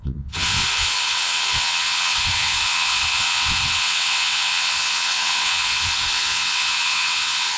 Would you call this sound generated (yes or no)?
yes